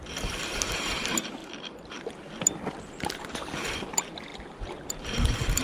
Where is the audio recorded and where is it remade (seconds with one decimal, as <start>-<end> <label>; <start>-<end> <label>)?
0.0-1.4 remade; 1.4-2.8 recorded; 2.8-4.3 remade; 4.3-4.9 recorded; 4.9-5.6 remade